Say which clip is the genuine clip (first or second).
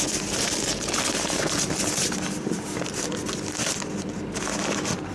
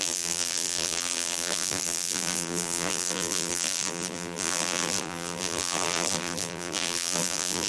first